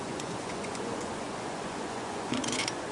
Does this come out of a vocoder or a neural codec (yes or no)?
yes